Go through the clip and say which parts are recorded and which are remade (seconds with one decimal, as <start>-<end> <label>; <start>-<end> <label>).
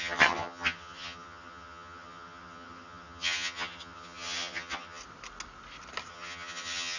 0.0-5.0 remade; 5.0-6.1 recorded; 6.1-7.0 remade